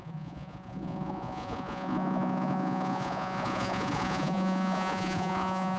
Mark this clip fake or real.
fake